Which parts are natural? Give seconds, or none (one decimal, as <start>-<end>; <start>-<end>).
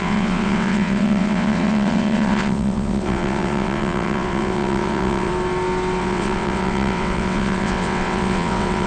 5.3-6.0